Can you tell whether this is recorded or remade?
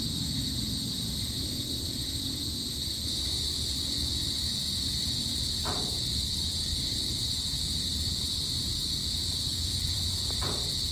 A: remade